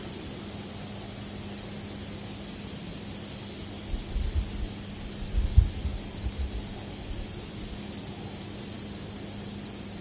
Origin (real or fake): real